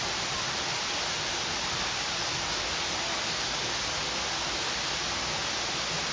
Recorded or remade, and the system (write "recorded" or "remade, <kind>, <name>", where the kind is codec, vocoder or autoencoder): recorded